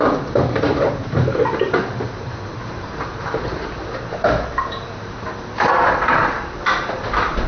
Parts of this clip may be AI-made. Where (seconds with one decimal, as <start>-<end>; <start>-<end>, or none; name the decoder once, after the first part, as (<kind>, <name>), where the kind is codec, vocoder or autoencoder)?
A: 0.0-6.2 (vocoder, BigVGAN v2); 7.0-7.5